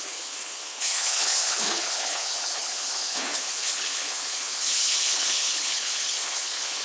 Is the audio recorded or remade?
remade